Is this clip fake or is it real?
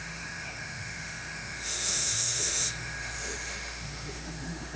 fake